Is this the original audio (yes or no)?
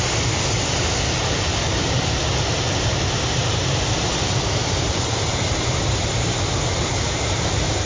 no